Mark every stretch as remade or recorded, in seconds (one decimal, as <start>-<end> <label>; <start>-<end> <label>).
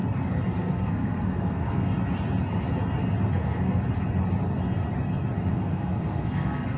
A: 0.0-0.6 recorded; 0.6-1.9 remade; 1.9-3.4 recorded; 3.4-3.8 remade; 3.8-5.5 recorded; 5.5-6.8 remade